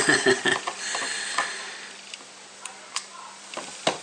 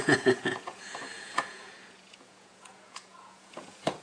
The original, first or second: first